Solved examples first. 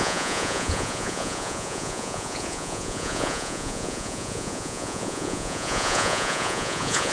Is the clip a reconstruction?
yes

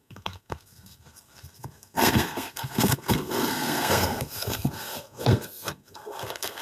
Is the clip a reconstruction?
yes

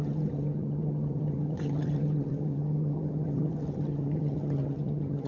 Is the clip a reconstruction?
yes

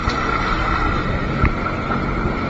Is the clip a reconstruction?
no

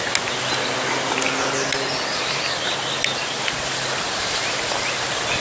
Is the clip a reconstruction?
no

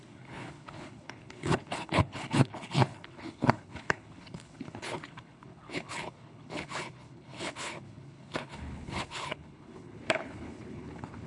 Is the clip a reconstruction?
yes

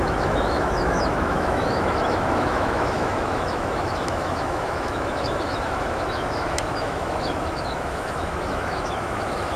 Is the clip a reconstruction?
yes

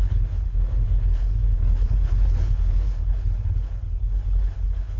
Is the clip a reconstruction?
yes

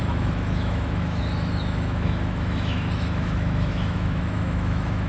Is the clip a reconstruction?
yes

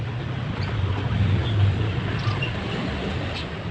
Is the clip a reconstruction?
no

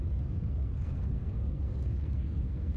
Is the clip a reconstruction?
yes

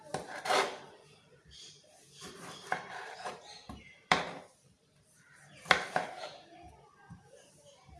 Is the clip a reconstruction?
yes